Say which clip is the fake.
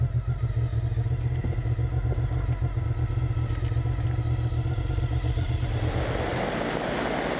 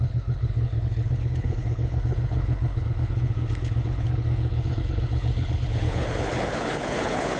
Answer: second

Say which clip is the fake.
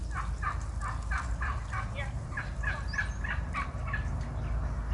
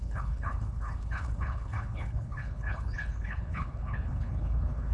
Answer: second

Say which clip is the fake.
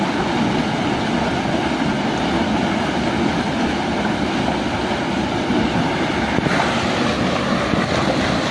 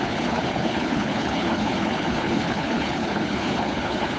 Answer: second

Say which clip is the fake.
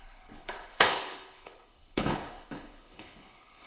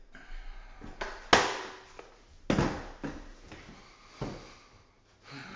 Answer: first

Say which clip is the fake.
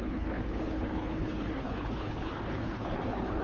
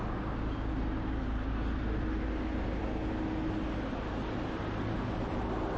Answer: first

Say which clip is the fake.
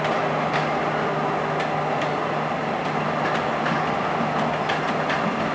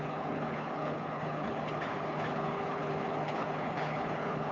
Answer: second